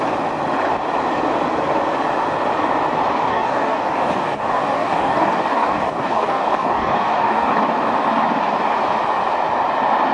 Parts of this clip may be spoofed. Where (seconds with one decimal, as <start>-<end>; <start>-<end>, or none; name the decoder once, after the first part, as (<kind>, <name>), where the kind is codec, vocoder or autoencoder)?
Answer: 3.3-7.5 (codec, DAC)

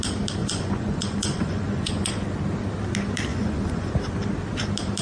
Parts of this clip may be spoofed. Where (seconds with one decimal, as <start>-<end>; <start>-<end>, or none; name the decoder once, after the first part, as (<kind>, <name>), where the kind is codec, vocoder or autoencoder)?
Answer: 0.4-2.1 (vocoder, Vocos); 3.3-3.9